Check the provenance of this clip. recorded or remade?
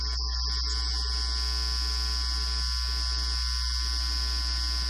recorded